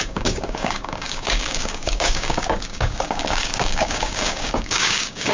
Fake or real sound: fake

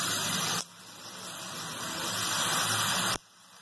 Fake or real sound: real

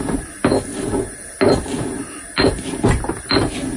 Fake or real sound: real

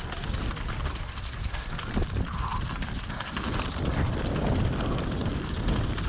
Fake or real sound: real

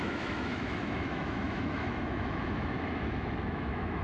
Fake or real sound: fake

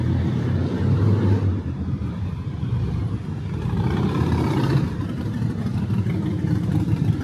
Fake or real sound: fake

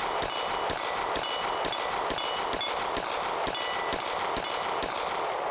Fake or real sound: real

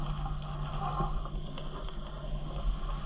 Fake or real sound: real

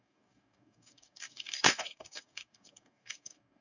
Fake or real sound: fake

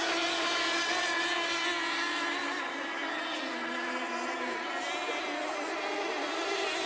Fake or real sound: real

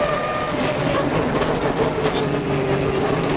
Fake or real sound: real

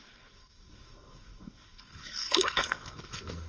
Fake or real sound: fake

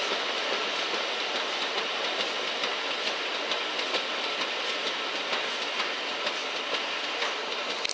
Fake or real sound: real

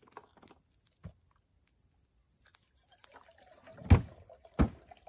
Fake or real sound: real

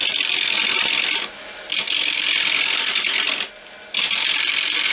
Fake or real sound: real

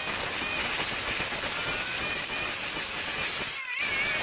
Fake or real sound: real